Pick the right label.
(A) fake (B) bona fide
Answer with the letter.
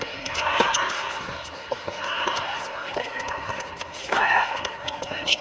A